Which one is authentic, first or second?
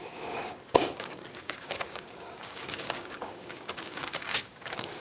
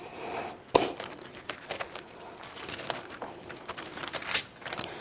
second